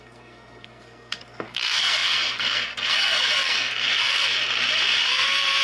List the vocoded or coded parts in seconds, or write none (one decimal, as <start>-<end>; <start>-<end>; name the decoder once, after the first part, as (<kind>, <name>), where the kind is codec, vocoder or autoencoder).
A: 0.0-4.4 (codec, SNAC); 5.1-5.6